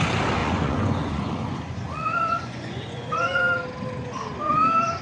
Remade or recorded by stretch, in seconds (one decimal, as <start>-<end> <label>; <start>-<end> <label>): 0.0-0.4 recorded; 0.4-3.4 remade; 3.4-5.0 recorded